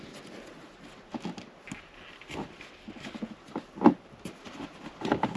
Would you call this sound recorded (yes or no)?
yes